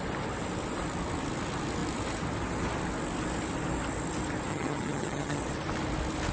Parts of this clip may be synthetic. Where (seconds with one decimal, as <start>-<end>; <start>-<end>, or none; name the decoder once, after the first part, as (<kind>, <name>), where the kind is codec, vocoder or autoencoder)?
4.5-5.4 (vocoder, HiFi-GAN)